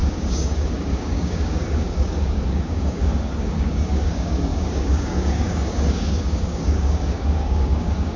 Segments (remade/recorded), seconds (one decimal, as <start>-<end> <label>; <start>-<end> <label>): 0.0-8.2 remade